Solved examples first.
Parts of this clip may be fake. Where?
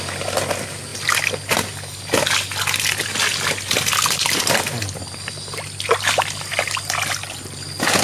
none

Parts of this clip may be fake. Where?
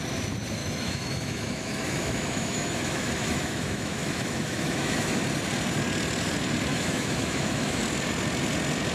0.6-5.2 (autoencoder, DAC-VAE); 6.7-7.8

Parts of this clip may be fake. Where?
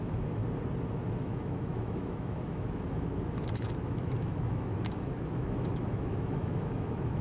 0.0-0.4 (autoencoder, DAC-VAE); 1.2-7.2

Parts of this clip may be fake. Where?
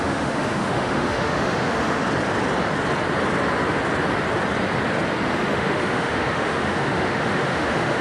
0.0-2.0 (autoencoder, DAC-VAE); 5.3-8.0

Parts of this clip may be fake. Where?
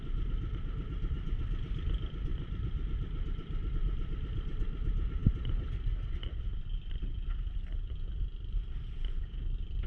none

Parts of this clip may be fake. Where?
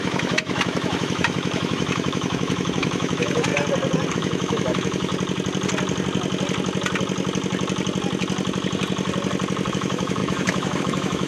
0.0-3.5 (autoencoder, DAC-VAE); 4.1-5.1; 9.7-11.3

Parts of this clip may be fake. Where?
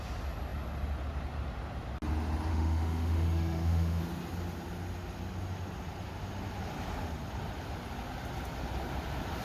2.5-4.0 (autoencoder, DAC-VAE)